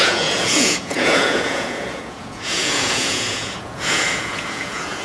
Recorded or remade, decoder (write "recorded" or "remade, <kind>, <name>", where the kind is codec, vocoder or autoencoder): remade, vocoder, Vocos